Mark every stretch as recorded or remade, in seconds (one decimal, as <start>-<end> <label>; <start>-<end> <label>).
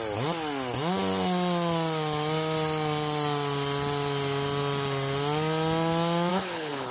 0.0-6.3 recorded; 6.3-6.9 remade